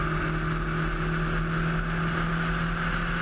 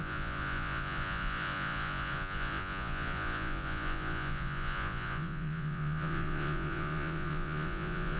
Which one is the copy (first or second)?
second